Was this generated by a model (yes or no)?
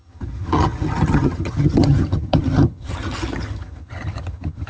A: yes